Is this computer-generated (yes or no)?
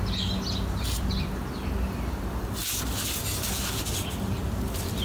no